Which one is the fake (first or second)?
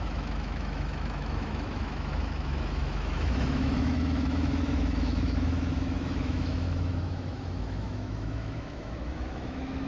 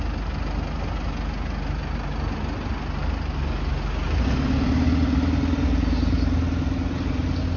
first